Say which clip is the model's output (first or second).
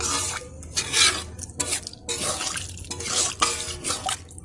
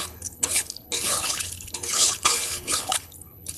second